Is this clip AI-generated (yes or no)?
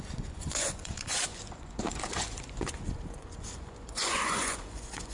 yes